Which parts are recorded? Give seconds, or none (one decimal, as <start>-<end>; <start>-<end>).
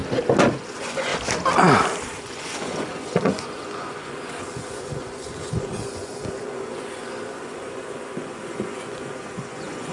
0.0-0.5; 1.1-2.2